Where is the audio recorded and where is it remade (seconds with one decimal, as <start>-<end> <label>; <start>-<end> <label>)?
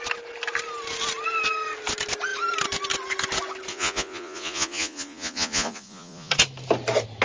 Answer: 0.0-3.7 recorded; 3.7-6.3 remade; 6.3-7.2 recorded